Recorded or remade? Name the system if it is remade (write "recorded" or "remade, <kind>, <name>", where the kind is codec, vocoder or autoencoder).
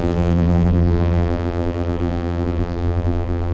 remade, vocoder, BigVGAN v2